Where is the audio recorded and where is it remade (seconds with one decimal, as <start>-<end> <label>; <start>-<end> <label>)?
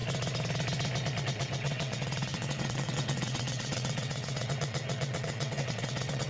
0.0-1.2 recorded; 1.2-6.3 remade